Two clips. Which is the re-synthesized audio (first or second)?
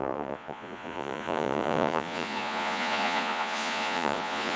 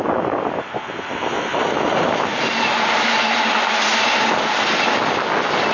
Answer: first